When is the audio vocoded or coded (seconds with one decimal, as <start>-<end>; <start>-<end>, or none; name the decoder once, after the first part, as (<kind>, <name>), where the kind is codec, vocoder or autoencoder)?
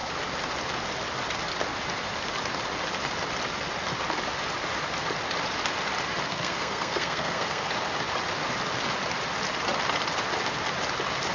6.3-7.7 (codec, SNAC)